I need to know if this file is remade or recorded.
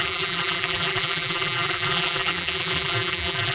remade